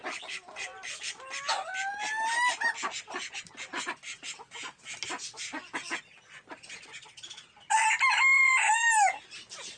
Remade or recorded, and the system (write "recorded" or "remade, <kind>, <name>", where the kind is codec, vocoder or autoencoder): recorded